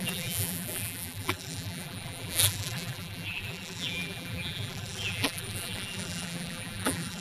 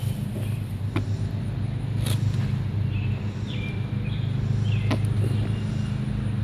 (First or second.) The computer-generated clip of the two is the first